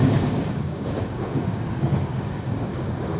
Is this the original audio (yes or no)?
no